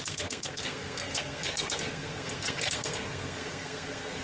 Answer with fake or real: fake